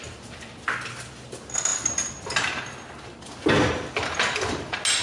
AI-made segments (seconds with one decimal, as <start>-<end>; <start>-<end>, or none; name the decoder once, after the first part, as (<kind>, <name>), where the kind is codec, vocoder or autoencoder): none